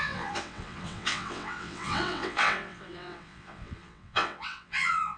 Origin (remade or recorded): remade